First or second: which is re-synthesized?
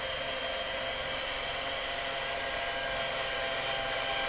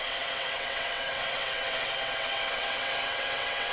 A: second